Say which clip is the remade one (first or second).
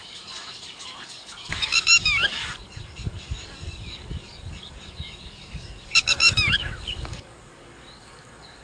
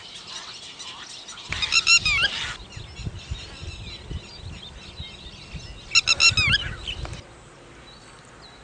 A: first